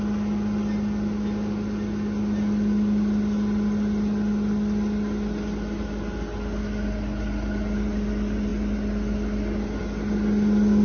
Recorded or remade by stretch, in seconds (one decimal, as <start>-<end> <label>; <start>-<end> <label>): 0.0-10.8 recorded